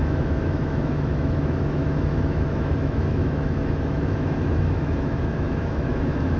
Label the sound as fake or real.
fake